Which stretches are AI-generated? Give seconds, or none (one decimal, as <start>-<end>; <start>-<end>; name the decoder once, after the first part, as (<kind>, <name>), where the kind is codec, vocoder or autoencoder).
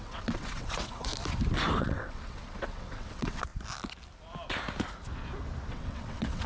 0.0-1.1 (vocoder, WaveNeXt); 1.8-3.5; 5.7-6.5